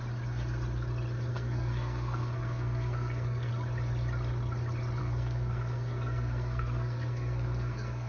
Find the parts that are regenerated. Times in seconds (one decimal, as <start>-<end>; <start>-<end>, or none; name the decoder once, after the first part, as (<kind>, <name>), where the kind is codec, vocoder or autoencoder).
1.3-3.5 (codec, SNAC); 5.0-8.1